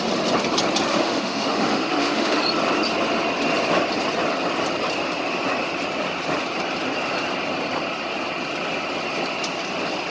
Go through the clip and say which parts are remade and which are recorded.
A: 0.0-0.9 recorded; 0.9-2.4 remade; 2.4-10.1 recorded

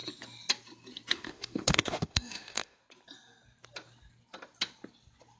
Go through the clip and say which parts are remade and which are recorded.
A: 0.0-1.1 recorded; 1.1-2.8 remade; 2.8-5.4 recorded